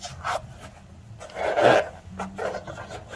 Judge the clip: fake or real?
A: real